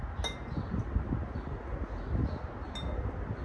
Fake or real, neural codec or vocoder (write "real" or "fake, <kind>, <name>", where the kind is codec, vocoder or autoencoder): real